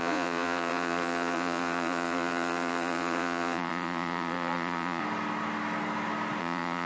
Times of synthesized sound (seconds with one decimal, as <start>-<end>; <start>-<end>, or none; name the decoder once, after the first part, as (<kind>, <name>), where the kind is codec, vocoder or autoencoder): 0.0-5.0 (vocoder, Vocos); 6.4-6.9